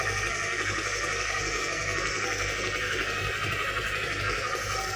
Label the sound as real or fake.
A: fake